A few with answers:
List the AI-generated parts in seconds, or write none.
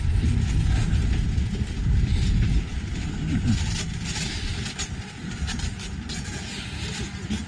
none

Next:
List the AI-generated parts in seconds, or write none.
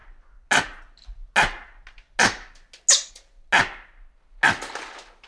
none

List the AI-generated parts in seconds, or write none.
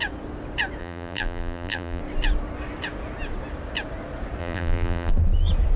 0.8-2.0; 4.4-5.1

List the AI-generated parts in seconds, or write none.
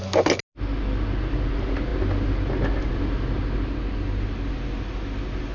none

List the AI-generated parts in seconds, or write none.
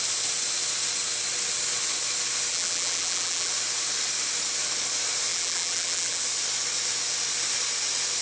2.5-3.5; 5.3-6.2